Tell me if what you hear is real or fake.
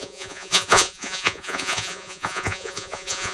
fake